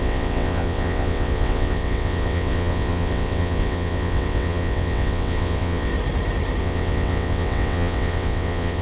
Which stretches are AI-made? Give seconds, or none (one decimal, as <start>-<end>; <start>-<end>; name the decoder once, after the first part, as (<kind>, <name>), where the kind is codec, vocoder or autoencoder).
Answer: 0.0-5.9 (vocoder, WaveNeXt); 6.6-8.8